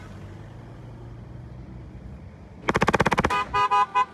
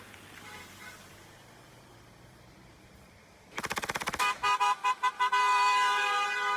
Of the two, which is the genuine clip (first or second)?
first